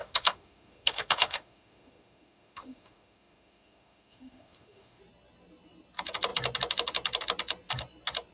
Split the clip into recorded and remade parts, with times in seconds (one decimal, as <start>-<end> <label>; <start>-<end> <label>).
0.0-5.0 remade; 5.0-8.3 recorded